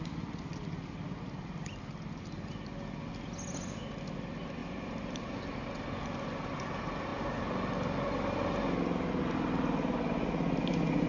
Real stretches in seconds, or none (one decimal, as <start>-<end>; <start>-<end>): 0.0-4.6; 5.4-11.1